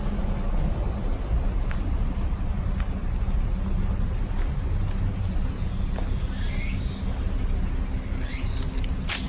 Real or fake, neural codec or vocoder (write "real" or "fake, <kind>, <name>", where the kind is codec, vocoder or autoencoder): real